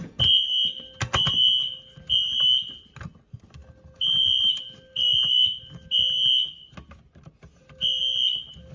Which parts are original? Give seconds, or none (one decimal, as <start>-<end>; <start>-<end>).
0.0-8.7